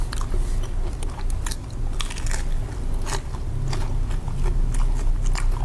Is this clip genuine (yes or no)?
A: yes